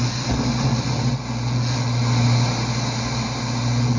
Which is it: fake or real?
real